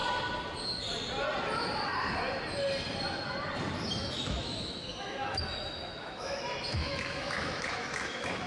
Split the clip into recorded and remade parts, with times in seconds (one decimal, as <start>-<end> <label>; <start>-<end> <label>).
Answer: 0.0-4.1 recorded; 4.1-8.5 remade